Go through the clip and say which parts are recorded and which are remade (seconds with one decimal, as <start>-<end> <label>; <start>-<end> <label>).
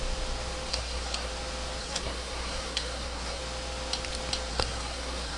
0.0-0.7 recorded; 0.7-1.3 remade; 1.3-1.8 recorded; 1.8-3.4 remade; 3.4-4.5 recorded; 4.5-5.4 remade